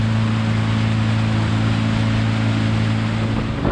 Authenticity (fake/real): real